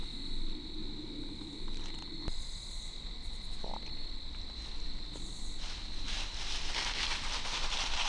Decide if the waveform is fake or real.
real